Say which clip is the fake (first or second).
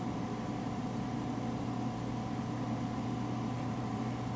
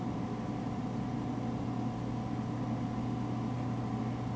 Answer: first